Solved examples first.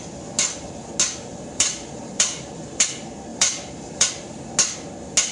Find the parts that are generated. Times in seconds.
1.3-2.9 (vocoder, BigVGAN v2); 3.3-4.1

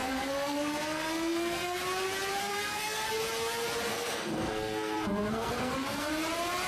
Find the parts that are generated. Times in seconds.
0.0-1.8 (codec, SNAC); 2.4-3.1; 3.9-6.1

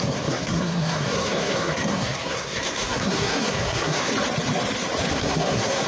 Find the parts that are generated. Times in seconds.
0.0-4.1 (codec, SNAC); 5.1-5.9

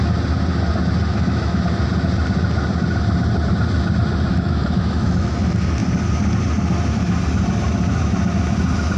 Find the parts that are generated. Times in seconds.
1.1-1.6 (autoencoder, DAC-VAE); 4.3-5.3

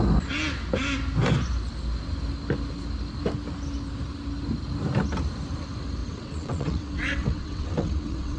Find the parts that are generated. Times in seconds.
6.0-8.4 (vocoder, WaveNeXt)

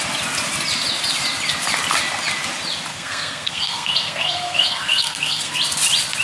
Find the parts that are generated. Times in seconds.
2.9-5.6 (codec, SNAC)

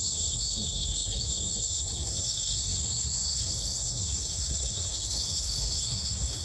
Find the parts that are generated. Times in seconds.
0.0-6.4 (codec, SNAC)